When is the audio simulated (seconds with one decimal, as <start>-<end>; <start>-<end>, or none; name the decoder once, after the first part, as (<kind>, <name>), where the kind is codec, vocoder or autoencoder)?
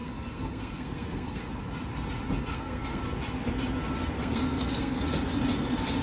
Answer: 0.0-1.4 (codec, SNAC); 2.5-3.0; 4.2-5.0